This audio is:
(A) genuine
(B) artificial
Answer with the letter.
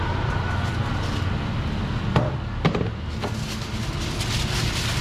A